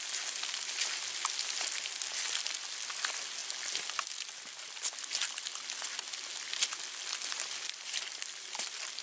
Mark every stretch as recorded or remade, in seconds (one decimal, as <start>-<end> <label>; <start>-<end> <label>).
0.0-9.0 recorded